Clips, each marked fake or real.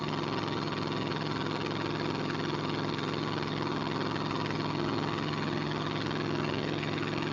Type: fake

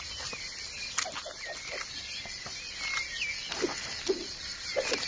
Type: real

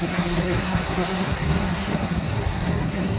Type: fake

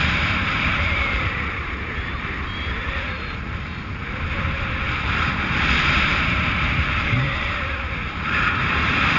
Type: fake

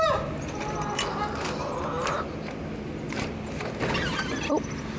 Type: real